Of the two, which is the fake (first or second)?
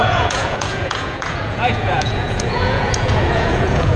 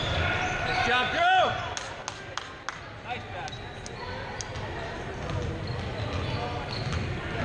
first